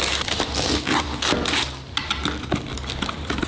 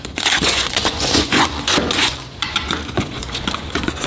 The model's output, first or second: second